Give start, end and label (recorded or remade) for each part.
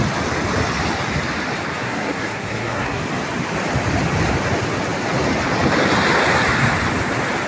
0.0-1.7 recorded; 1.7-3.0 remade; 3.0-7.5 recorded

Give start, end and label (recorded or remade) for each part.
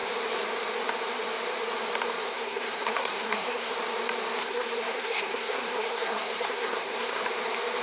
0.0-2.3 recorded; 2.3-3.7 remade; 3.7-4.4 recorded; 4.4-7.2 remade; 7.2-7.8 recorded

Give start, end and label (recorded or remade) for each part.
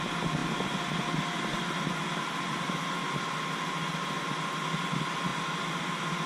0.0-6.3 recorded